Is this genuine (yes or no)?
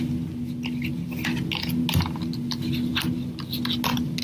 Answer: yes